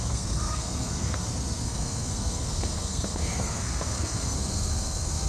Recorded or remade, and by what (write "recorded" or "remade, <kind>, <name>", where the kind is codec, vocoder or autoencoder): remade, codec, SNAC